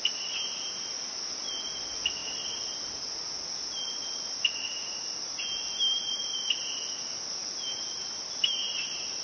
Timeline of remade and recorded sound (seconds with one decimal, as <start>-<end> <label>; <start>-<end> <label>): 0.0-9.2 recorded